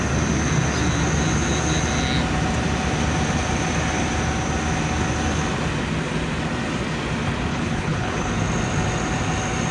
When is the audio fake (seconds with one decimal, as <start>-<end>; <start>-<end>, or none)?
7.5-8.3